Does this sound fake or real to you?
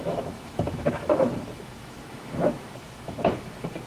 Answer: fake